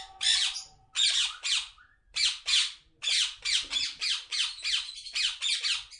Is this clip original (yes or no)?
yes